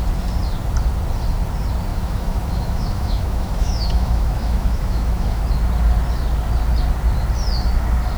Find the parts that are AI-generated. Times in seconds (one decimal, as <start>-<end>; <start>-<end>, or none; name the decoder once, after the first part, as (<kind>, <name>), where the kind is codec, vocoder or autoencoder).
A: 1.9-5.4 (autoencoder, DAC-VAE)